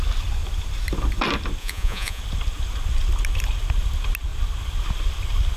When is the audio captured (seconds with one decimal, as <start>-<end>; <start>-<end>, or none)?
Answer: 0.0-1.6; 2.2-5.6